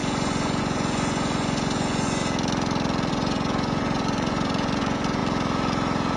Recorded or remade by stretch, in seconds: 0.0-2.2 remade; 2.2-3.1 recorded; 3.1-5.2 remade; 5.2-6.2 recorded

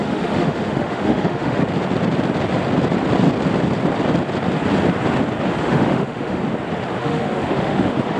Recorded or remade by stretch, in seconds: 0.0-1.6 remade; 1.6-5.6 recorded; 5.6-6.4 remade; 6.4-7.0 recorded; 7.0-8.2 remade

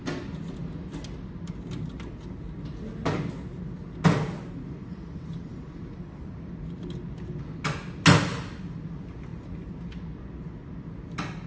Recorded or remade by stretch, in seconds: 0.0-4.8 recorded; 4.8-6.5 remade; 6.5-11.5 recorded

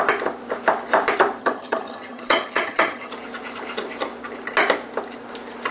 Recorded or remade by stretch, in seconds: 0.0-1.4 recorded; 1.4-3.1 remade; 3.1-5.7 recorded

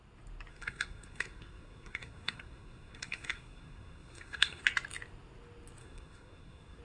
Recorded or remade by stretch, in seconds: 0.0-0.5 recorded; 0.5-4.6 remade; 4.6-5.8 recorded; 5.8-6.8 remade